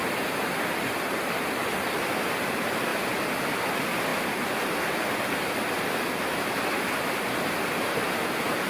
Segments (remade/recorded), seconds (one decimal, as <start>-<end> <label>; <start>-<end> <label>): 0.0-8.7 recorded